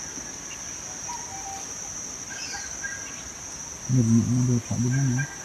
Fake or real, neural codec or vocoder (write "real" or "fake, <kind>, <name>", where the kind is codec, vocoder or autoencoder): real